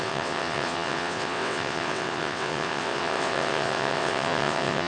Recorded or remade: remade